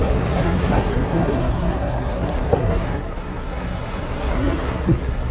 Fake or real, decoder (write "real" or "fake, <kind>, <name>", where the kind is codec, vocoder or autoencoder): fake, codec, SNAC